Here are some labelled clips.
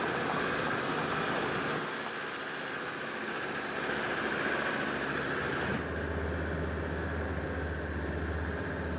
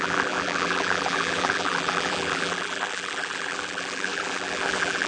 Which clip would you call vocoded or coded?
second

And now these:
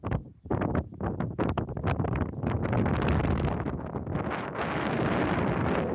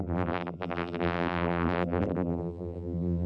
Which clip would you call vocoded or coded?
second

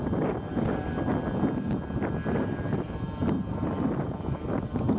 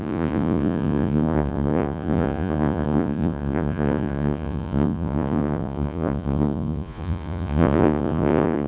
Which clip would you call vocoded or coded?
second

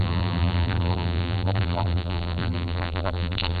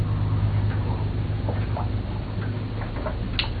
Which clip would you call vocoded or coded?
first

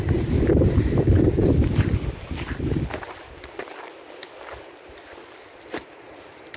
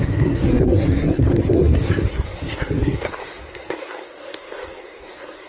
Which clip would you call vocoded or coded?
second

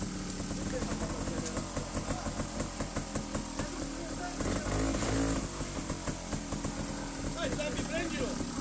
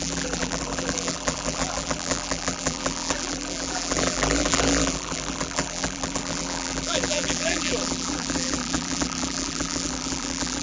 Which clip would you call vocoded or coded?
second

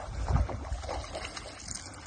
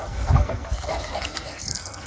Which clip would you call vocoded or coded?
second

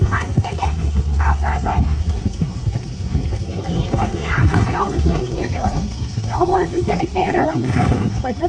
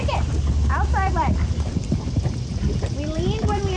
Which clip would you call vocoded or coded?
first